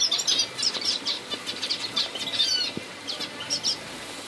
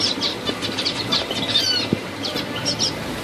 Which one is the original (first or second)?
first